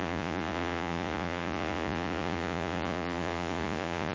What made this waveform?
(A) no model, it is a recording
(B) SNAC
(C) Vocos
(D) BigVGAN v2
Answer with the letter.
C